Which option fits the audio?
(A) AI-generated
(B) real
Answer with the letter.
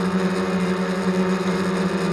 B